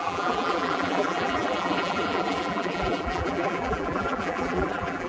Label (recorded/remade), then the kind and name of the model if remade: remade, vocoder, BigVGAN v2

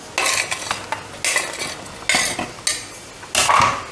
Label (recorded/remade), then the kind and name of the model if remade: recorded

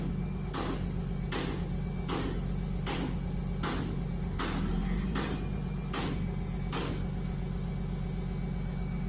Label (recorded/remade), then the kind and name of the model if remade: recorded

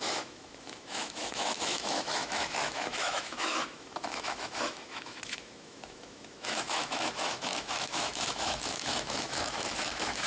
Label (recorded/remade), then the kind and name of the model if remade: remade, autoencoder, DAC-VAE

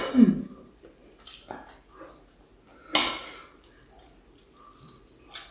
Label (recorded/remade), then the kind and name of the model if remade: recorded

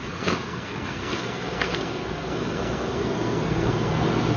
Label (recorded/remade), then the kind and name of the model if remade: remade, codec, SNAC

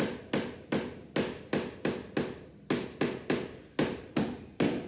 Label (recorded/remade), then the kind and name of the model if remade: recorded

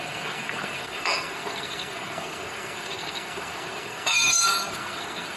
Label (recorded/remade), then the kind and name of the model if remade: remade, codec, SNAC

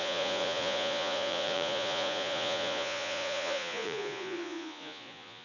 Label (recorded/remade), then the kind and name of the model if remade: remade, vocoder, Vocos